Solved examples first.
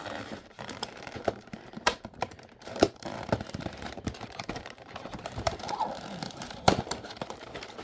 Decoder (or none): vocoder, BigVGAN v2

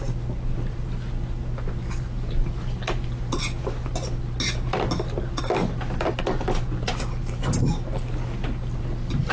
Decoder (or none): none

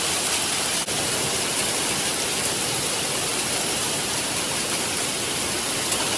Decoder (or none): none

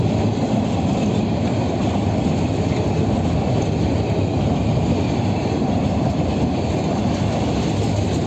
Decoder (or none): none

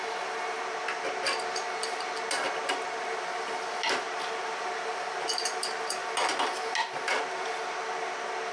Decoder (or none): none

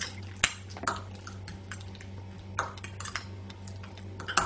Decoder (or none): none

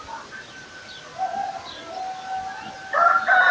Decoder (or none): none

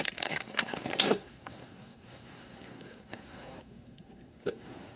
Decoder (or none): codec, SNAC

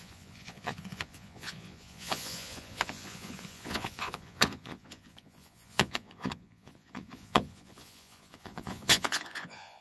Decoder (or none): vocoder, Vocos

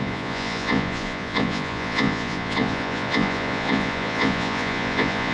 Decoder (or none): vocoder, Vocos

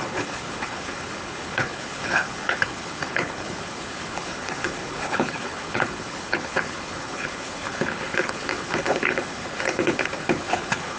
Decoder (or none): codec, HILCodec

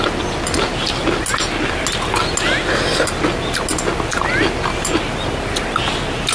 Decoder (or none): none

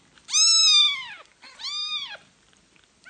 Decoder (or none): none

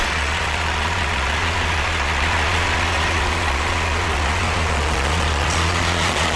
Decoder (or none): vocoder, Vocos